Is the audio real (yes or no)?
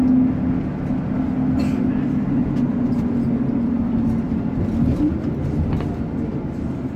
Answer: yes